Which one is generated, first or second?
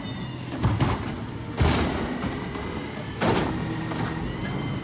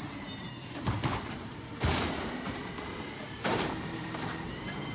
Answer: second